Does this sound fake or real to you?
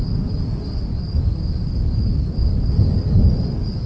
real